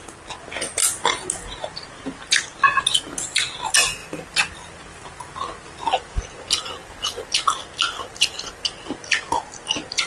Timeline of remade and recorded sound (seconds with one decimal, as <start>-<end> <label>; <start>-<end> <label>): 0.0-4.9 recorded; 4.9-6.2 remade; 6.2-10.1 recorded